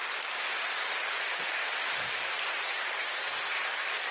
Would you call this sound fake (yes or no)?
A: no